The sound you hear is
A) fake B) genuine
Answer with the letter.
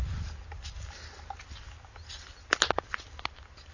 B